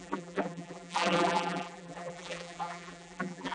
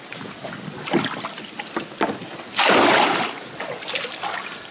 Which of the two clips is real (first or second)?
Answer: second